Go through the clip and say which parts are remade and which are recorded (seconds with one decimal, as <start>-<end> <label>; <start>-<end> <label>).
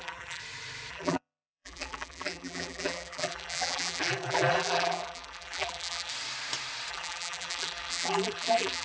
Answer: 0.0-0.4 remade; 0.4-0.9 recorded; 0.9-6.1 remade; 6.1-6.9 recorded; 6.9-8.8 remade